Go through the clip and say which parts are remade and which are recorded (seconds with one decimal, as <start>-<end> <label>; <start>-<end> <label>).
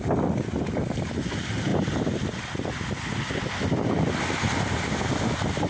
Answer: 0.0-5.7 recorded